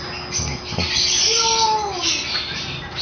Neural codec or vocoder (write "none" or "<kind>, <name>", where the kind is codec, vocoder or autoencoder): none